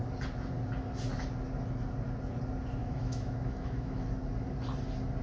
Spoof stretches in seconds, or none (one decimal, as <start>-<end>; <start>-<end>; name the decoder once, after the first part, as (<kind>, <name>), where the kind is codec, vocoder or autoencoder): 2.8-4.1 (autoencoder, DAC-VAE)